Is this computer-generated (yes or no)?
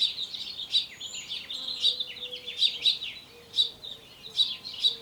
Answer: no